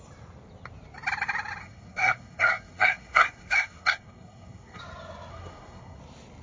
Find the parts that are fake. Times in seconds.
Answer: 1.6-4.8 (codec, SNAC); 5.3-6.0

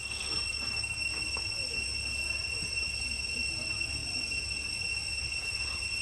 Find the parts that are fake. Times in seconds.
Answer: 0.0-1.1 (codec, SNAC)

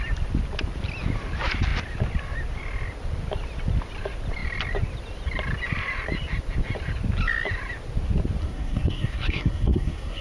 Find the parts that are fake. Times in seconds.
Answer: 8.4-10.2 (codec, SNAC)

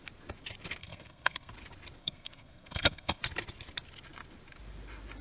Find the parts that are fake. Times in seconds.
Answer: 0.8-1.5 (codec, SNAC); 2.0-3.2

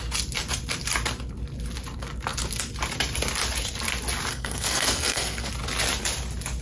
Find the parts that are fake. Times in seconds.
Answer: 4.3-5.5 (codec, SNAC)

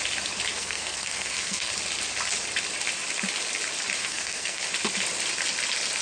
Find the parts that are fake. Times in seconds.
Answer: 0.5-1.7 (codec, SNAC); 4.0-4.6

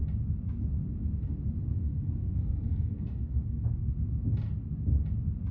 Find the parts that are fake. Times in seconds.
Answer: 1.7-3.6 (codec, SNAC)

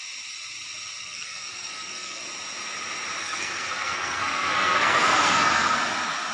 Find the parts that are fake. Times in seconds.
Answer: 1.0-2.2 (codec, SNAC); 3.2-5.8